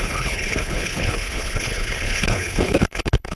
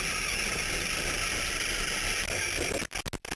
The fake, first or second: first